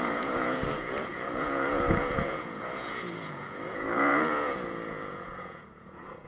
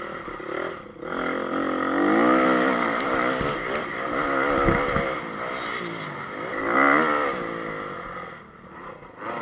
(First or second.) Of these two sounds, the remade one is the first